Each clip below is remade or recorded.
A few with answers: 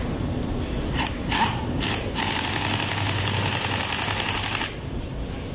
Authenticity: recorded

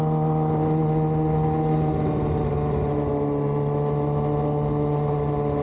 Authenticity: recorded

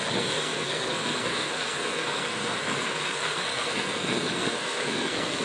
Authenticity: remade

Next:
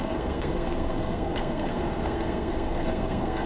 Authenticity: remade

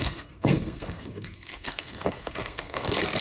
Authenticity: remade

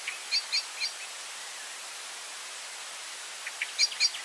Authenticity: recorded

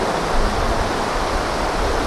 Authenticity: recorded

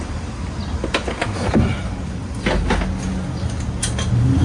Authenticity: recorded